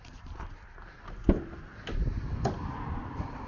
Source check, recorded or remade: recorded